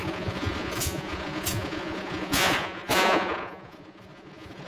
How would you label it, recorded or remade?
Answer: remade